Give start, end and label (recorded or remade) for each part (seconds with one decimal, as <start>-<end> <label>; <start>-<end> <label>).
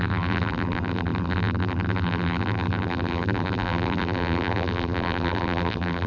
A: 0.0-6.1 remade